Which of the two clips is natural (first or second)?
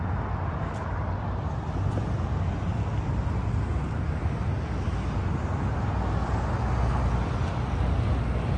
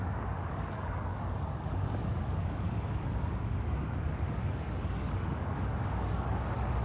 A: first